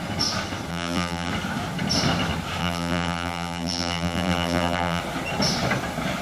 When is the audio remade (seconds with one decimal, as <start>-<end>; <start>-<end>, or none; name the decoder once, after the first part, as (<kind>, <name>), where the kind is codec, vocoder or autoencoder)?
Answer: 0.7-1.3 (vocoder, BigVGAN v2); 2.6-5.0